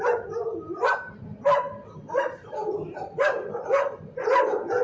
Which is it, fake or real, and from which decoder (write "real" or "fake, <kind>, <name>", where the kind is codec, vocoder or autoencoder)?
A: fake, vocoder, BigVGAN v2